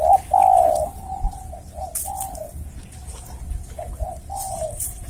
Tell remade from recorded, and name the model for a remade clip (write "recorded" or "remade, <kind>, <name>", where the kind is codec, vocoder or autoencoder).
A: recorded